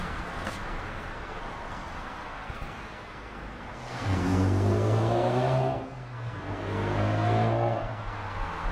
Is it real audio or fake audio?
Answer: fake